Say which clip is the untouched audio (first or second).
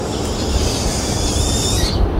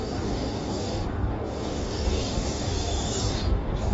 first